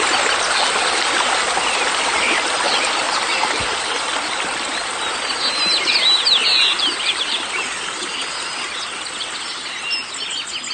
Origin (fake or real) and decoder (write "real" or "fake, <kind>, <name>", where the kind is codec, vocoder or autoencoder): real